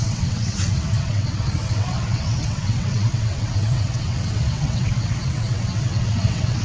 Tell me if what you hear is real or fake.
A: fake